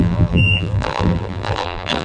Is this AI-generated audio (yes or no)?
yes